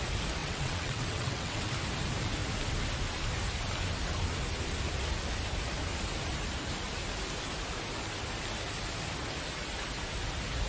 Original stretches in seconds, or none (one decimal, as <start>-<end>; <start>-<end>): 0.0-0.4; 1.7-10.7